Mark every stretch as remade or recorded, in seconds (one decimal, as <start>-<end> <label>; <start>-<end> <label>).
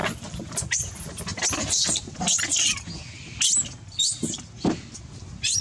0.0-5.6 recorded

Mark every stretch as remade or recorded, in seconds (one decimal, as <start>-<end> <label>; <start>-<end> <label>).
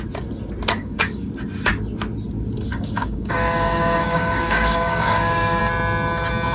0.0-0.8 recorded; 0.8-1.3 remade; 1.3-2.7 recorded; 2.7-5.6 remade; 5.6-6.5 recorded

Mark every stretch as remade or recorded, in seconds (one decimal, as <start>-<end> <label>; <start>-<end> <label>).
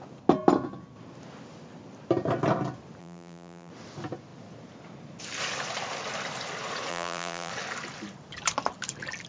0.0-3.0 recorded; 3.0-3.7 remade; 3.7-6.9 recorded; 6.9-7.5 remade; 7.5-9.3 recorded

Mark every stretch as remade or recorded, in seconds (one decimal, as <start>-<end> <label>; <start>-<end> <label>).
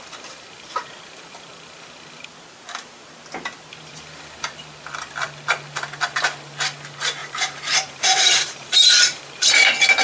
0.0-7.2 recorded; 7.2-9.4 remade; 9.4-10.0 recorded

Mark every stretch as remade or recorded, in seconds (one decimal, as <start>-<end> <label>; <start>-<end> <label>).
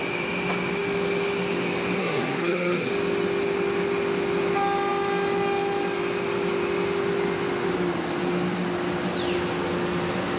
0.0-2.0 recorded; 2.0-2.9 remade; 2.9-10.4 recorded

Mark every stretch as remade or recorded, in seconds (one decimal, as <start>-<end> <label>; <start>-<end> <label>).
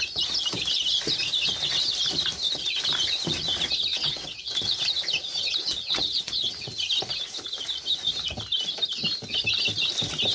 0.0-3.9 recorded; 3.9-4.5 remade; 4.5-5.6 recorded; 5.6-6.8 remade; 6.8-10.3 recorded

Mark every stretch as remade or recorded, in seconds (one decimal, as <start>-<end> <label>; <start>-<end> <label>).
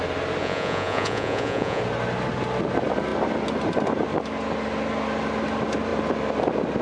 0.0-0.4 recorded; 0.4-1.8 remade; 1.8-6.8 recorded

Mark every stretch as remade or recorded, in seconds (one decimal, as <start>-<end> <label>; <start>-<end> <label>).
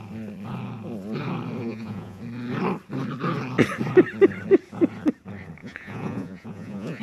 0.0-1.6 recorded; 1.6-2.2 remade; 2.2-5.6 recorded; 5.6-7.0 remade